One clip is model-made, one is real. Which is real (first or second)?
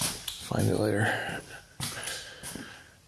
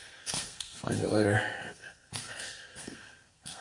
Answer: first